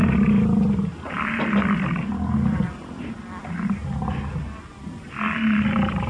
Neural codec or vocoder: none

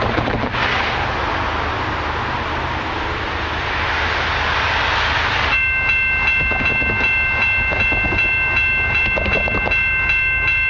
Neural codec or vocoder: none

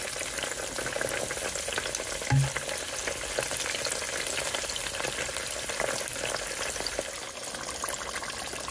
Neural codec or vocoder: none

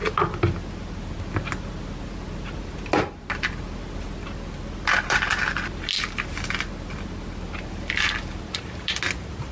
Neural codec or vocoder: none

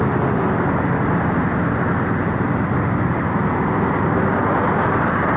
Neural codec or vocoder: none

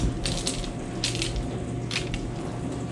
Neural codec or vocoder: none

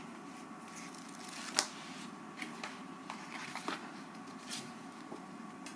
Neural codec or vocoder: none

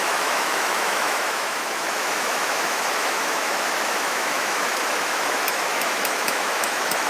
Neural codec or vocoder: autoencoder, DAC-VAE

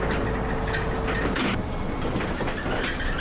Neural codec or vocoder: none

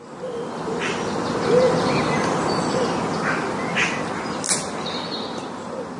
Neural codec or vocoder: none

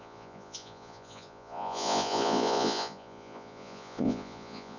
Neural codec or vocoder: vocoder, Vocos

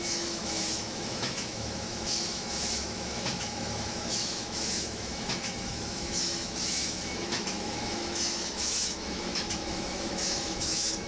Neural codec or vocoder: autoencoder, DAC-VAE